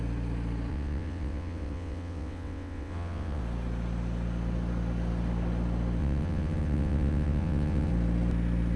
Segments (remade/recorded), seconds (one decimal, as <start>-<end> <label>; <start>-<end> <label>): 0.0-0.7 recorded; 0.7-3.4 remade; 3.4-6.0 recorded; 6.0-7.9 remade; 7.9-8.8 recorded